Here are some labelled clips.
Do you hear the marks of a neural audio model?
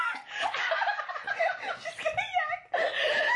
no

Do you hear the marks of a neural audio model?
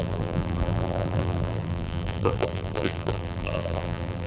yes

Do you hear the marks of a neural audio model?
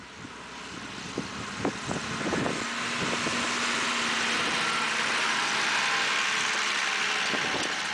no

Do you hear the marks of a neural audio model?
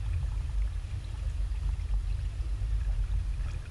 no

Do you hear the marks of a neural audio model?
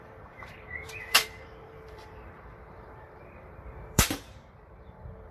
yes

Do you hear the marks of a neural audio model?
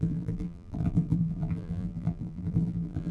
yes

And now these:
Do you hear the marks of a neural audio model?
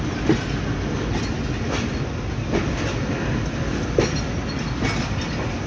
no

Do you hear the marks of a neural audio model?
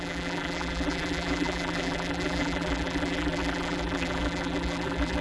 yes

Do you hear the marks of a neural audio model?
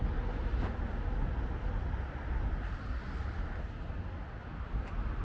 no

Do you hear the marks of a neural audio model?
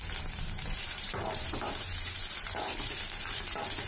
yes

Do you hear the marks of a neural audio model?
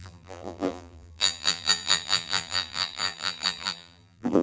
yes